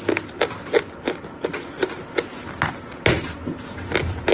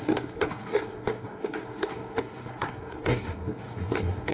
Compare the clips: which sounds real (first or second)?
first